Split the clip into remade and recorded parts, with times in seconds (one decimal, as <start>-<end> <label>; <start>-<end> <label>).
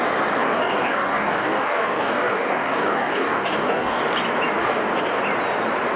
0.0-0.4 recorded; 0.4-4.0 remade; 4.0-4.6 recorded; 4.6-5.2 remade; 5.2-6.0 recorded